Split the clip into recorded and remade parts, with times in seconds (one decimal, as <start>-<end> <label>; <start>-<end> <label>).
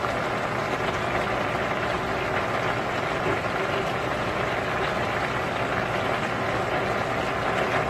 0.0-3.1 recorded; 3.1-4.9 remade; 4.9-7.9 recorded